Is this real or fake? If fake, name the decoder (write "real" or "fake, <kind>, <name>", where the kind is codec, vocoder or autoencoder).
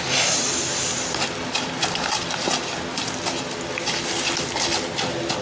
real